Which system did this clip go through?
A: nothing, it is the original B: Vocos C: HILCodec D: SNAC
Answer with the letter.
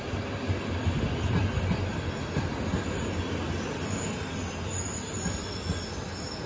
A